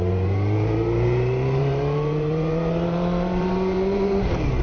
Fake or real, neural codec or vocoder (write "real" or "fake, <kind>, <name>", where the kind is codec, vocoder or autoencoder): fake, vocoder, BigVGAN v2